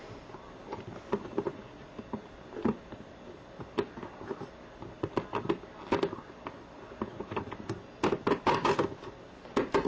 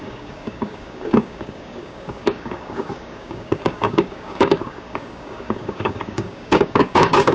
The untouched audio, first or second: first